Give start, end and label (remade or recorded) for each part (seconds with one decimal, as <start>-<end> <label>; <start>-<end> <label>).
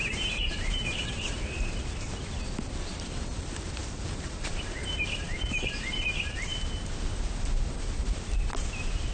0.0-2.1 remade; 2.1-3.8 recorded; 3.8-5.9 remade; 5.9-9.1 recorded